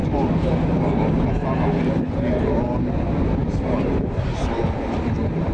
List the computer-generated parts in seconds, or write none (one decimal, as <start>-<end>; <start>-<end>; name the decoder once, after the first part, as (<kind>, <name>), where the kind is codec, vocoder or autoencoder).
none